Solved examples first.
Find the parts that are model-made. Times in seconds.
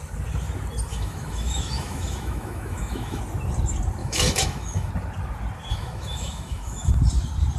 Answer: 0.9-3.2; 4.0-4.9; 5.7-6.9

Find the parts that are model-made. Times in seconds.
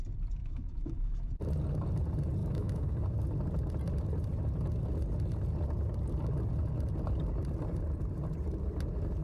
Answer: 0.4-1.3; 2.4-2.9